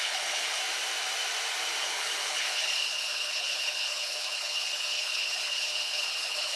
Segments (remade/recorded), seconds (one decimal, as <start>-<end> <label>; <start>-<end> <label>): 0.0-0.6 remade; 0.6-1.8 recorded; 1.8-6.6 remade